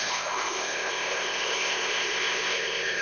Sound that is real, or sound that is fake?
fake